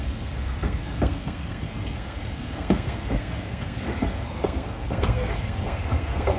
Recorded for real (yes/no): no